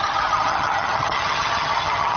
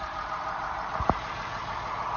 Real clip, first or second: second